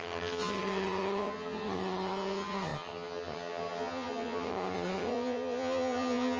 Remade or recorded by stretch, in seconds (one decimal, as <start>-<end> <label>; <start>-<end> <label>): 0.0-6.4 remade